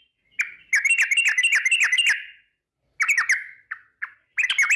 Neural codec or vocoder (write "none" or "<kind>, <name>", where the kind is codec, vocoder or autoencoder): none